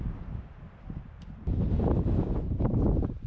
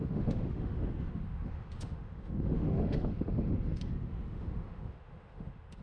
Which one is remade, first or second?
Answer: second